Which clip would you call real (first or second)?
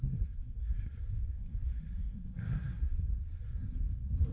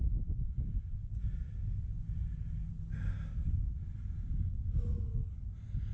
second